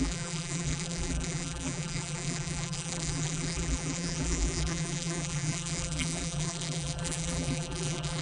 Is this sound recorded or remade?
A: remade